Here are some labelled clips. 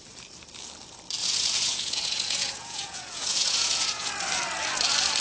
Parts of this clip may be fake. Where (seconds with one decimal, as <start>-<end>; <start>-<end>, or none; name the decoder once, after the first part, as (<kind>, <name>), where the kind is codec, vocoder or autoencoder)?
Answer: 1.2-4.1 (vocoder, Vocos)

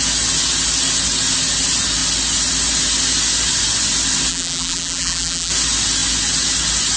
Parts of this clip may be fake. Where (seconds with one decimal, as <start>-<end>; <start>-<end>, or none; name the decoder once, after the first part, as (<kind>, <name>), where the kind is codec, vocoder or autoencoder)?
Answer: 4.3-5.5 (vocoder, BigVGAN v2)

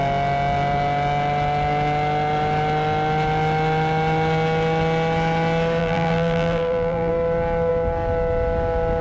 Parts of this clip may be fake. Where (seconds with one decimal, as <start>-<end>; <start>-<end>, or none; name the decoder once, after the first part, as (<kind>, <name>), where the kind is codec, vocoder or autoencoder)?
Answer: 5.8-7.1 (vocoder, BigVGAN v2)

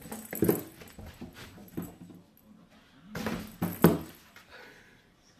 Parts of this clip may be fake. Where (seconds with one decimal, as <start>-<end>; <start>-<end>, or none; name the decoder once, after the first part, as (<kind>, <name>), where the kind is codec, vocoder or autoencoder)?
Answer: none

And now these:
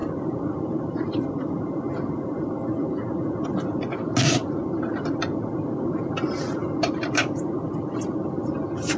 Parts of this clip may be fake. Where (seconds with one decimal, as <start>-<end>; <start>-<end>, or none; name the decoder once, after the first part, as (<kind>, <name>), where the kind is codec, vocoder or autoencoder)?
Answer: 0.0-2.6 (vocoder, BigVGAN v2); 4.3-9.0

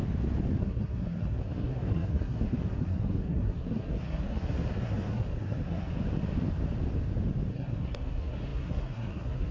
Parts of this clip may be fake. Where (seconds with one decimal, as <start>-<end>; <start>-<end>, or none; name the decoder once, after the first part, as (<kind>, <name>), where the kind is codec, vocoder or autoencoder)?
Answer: 0.6-5.9 (codec, SNAC); 7.5-9.5